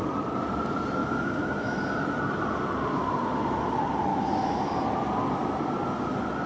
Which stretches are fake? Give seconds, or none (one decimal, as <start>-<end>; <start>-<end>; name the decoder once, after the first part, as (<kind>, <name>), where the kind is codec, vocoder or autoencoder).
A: 1.0-1.8 (autoencoder, DAC-VAE); 4.1-4.7